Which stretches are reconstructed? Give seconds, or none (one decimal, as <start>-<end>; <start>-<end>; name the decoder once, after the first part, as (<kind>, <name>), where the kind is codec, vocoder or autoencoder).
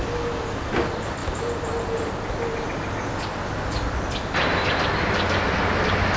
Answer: none